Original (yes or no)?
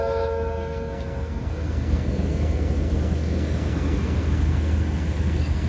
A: no